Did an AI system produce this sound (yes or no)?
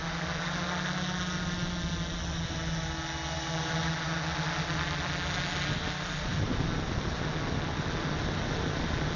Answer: no